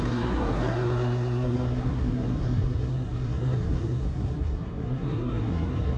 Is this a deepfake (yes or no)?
yes